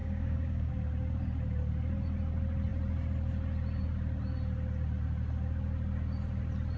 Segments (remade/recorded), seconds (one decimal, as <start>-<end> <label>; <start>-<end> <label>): 0.0-0.7 remade; 0.7-6.8 recorded